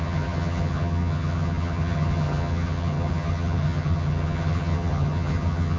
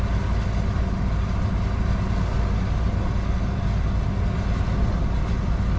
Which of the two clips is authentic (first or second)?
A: second